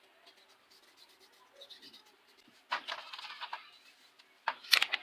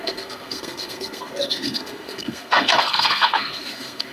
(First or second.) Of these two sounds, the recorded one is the first